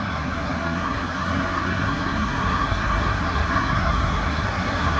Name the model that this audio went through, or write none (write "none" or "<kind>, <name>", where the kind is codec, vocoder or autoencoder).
codec, SNAC